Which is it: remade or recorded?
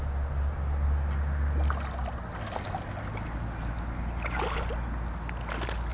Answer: recorded